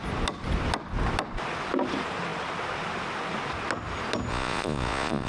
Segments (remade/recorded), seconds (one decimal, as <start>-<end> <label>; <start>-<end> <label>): 0.0-4.3 recorded; 4.3-5.3 remade